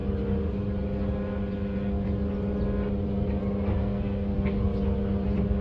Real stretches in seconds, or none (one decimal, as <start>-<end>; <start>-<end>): 0.0-3.8; 4.6-5.6